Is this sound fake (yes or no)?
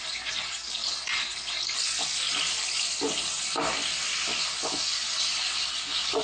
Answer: no